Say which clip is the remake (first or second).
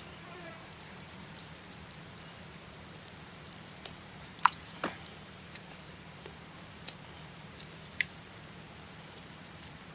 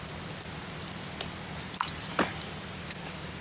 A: first